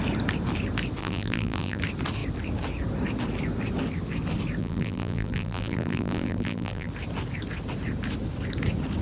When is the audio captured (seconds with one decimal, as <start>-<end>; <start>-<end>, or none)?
0.0-1.0; 1.8-4.6; 6.9-9.0